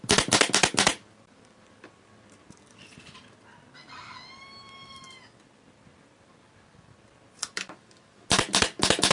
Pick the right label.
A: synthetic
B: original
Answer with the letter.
B